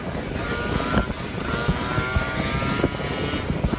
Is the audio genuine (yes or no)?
yes